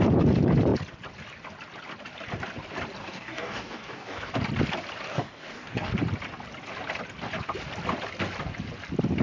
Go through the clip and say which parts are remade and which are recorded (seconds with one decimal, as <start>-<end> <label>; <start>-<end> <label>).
0.0-3.0 recorded; 3.0-4.3 remade; 4.3-5.1 recorded; 5.1-5.9 remade; 5.9-9.2 recorded